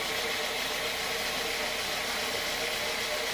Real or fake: real